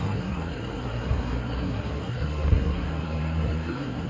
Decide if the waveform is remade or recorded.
remade